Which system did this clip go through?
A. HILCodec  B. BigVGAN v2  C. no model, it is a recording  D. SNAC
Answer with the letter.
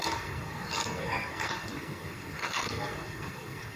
D